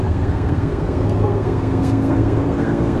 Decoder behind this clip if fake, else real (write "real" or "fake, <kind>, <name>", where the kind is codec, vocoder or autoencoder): fake, codec, SNAC